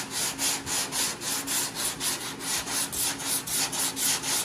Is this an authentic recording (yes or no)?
yes